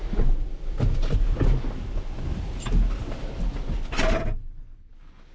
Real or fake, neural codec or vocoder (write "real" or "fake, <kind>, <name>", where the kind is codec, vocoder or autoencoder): real